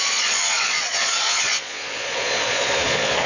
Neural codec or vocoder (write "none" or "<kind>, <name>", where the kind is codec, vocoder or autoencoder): vocoder, Vocos